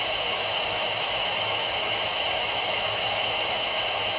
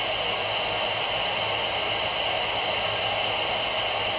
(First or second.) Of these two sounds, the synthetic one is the first